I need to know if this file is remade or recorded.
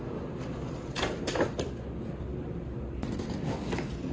recorded